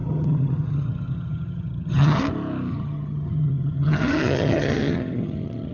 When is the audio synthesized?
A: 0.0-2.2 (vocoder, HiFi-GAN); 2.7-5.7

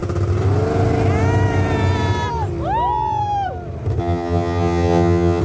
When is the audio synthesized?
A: 4.0-5.4 (vocoder, HiFi-GAN)

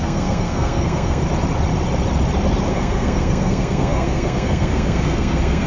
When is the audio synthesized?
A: 0.0-1.2 (codec, SNAC); 2.7-5.7

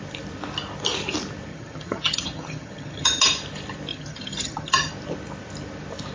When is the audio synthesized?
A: 1.5-3.2 (vocoder, HiFi-GAN); 3.9-4.9

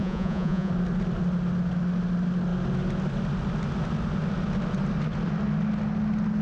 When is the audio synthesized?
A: 0.0-0.7 (vocoder, Vocos)

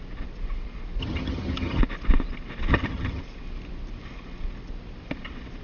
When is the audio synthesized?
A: 1.0-1.8 (vocoder, HiFi-GAN); 2.7-3.2